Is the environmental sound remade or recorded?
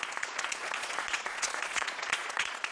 remade